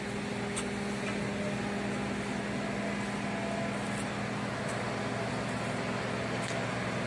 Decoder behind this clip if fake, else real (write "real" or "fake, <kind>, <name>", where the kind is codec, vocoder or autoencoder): real